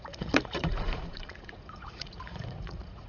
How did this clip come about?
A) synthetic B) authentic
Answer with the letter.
A